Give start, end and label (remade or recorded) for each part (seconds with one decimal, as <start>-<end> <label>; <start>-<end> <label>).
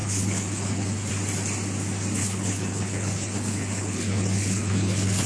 0.0-1.1 remade; 1.1-2.2 recorded; 2.2-5.3 remade